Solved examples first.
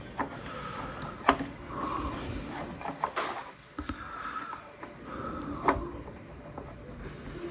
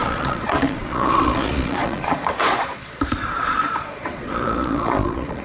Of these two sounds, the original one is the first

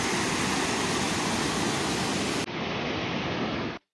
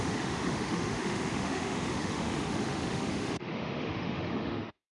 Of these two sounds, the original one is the first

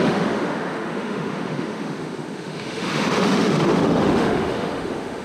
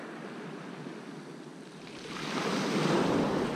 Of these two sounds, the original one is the second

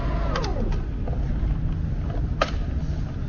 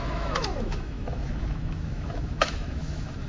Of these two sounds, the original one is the first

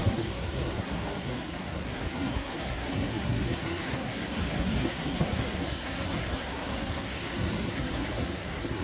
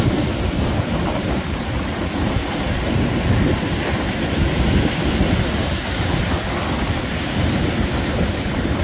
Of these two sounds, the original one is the second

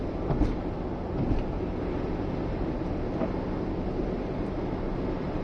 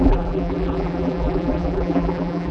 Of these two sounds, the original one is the first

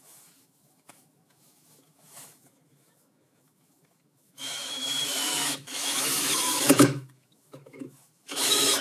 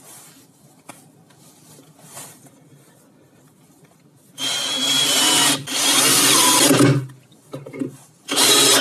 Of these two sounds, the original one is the second